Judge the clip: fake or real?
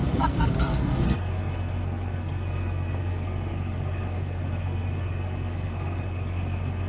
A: fake